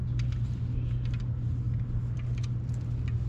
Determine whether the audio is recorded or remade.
recorded